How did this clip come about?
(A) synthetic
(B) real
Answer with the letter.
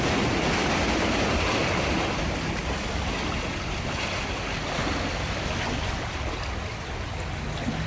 B